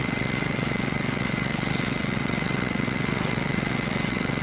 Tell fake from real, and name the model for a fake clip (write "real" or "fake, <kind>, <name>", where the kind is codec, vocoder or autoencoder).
fake, vocoder, WaveNeXt